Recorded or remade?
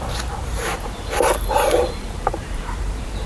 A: remade